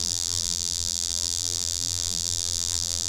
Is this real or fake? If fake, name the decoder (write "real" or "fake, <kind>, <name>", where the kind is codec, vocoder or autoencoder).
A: fake, vocoder, BigVGAN v2